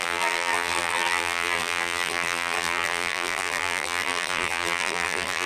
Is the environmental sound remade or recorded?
remade